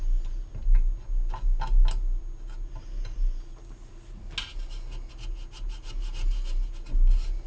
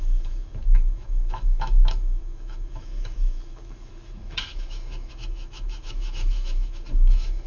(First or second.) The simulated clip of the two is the second